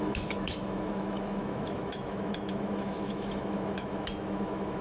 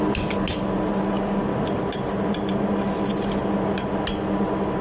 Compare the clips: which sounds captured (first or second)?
second